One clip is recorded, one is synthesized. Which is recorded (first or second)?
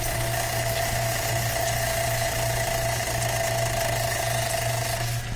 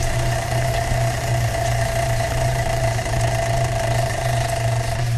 first